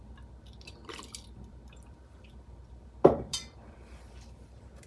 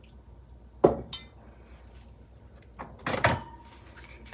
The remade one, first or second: first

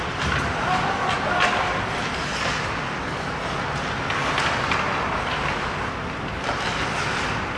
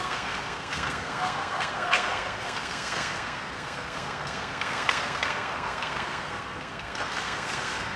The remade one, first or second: second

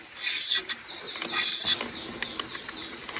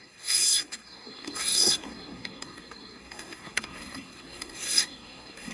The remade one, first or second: second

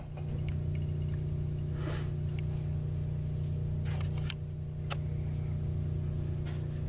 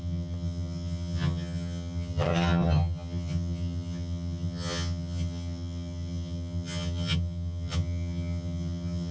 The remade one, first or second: second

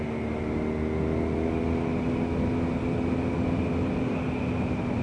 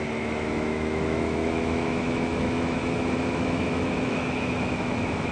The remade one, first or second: second